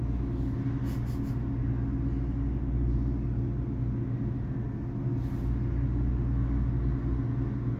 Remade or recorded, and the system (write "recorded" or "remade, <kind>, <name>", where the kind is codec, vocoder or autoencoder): recorded